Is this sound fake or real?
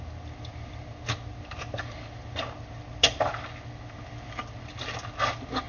real